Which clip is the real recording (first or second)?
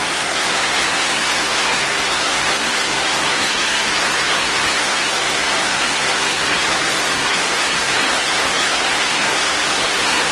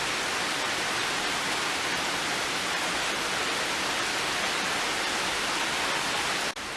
second